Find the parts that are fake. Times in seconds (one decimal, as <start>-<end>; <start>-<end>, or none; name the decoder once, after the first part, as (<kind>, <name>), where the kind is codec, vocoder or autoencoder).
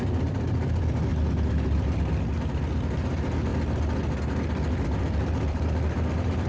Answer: 0.0-1.1 (vocoder, BigVGAN v2); 3.1-3.5; 4.2-6.5